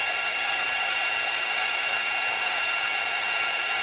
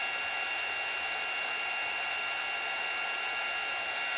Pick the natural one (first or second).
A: second